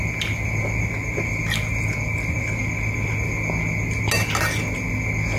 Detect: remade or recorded recorded